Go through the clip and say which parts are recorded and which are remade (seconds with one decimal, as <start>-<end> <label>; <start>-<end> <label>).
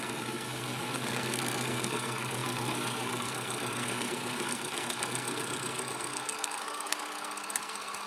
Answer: 0.0-8.1 remade